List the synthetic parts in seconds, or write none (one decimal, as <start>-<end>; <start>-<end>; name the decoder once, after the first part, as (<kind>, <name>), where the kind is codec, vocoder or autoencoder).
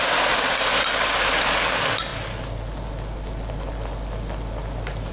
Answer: none